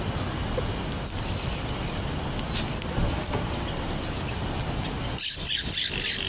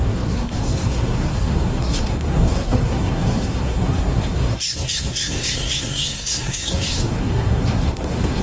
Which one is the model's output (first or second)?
second